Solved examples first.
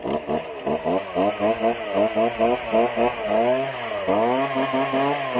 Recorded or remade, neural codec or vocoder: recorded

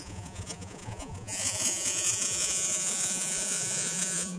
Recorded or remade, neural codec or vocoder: remade, vocoder, Vocos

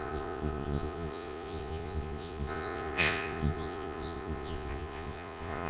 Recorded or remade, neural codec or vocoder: remade, vocoder, Vocos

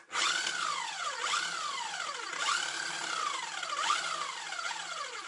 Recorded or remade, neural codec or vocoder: recorded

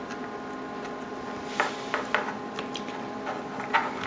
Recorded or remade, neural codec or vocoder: recorded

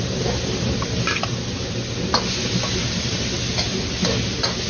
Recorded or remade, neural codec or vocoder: recorded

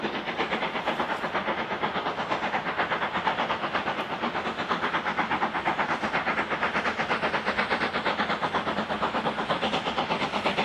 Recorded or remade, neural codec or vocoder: recorded